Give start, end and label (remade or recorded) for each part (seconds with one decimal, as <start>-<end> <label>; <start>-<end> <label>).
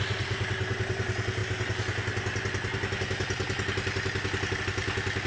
0.0-5.3 recorded